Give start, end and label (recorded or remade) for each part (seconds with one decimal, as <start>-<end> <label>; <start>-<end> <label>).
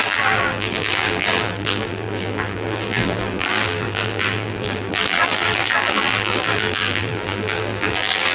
0.0-8.3 remade